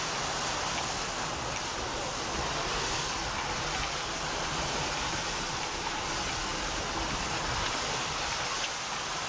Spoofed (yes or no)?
no